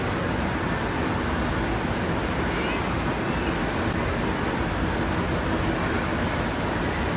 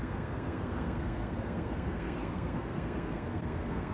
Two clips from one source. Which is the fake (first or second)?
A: second